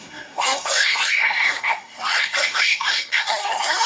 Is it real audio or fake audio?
fake